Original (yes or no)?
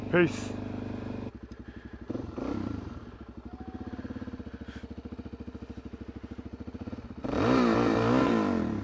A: yes